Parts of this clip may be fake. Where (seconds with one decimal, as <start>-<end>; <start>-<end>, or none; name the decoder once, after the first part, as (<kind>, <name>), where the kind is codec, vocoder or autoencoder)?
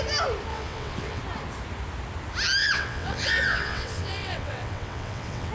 0.5-1.2 (vocoder, WaveNeXt); 2.6-5.5